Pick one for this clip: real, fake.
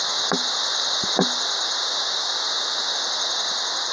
real